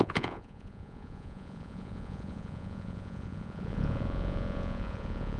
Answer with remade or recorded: remade